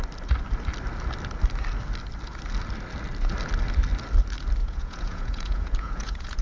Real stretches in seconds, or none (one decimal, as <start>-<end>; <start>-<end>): 0.0-4.6